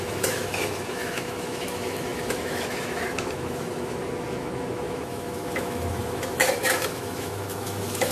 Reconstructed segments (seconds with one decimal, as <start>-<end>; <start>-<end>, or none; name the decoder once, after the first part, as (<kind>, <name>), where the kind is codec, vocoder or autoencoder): 0.0-8.1 (autoencoder, DAC-VAE)